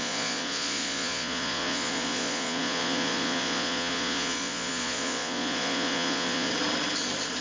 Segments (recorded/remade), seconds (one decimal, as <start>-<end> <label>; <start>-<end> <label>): 0.0-6.5 remade; 6.5-7.4 recorded